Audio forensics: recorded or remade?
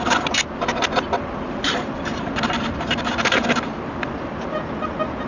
recorded